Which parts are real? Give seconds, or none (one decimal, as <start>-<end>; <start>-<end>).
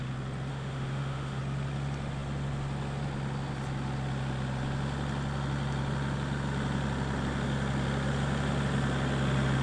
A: 0.0-0.5; 1.4-9.6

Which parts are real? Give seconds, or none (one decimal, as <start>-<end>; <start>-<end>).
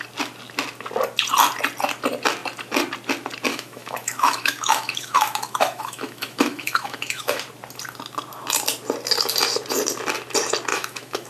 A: 0.0-3.5; 7.4-10.7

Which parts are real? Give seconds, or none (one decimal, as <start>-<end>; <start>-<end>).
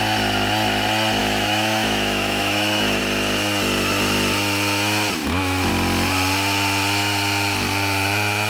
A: 0.0-1.2; 3.0-5.2; 5.7-8.5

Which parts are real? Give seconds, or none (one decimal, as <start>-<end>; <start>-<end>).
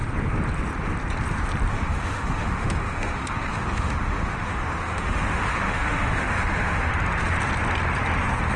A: 0.0-1.7; 6.9-8.6